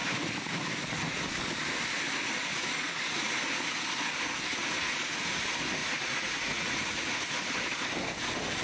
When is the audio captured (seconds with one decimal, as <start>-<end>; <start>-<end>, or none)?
0.0-2.5; 3.5-4.5; 5.2-5.8; 7.2-8.6